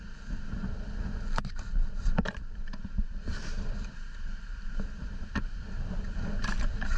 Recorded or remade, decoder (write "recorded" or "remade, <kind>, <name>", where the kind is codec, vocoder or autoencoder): remade, vocoder, BigVGAN v2